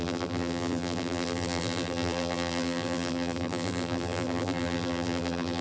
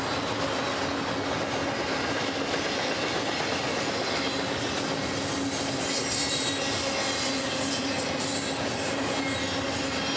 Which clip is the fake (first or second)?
first